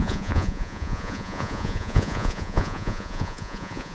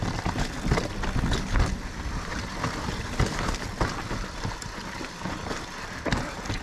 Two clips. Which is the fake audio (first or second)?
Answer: first